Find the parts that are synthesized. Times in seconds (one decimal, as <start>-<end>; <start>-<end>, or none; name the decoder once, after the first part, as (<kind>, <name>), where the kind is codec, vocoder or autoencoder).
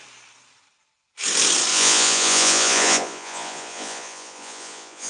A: 1.7-5.1 (vocoder, Vocos)